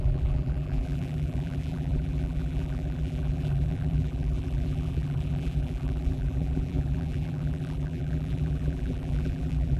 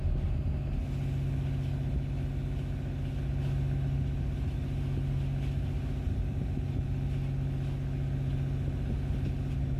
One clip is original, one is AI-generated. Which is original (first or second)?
second